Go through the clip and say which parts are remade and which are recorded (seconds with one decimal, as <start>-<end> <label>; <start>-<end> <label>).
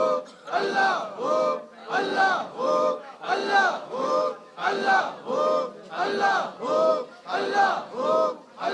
0.0-1.8 recorded; 1.8-5.0 remade; 5.0-8.7 recorded